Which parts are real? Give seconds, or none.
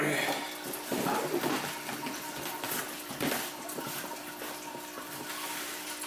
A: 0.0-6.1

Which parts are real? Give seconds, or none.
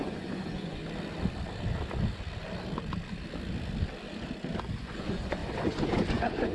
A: 0.8-4.6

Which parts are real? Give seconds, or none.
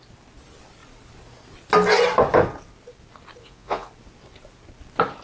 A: 0.0-3.4; 3.9-5.2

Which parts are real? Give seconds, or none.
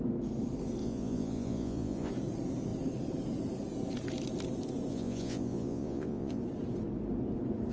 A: 0.0-0.8; 2.1-4.9; 6.4-7.7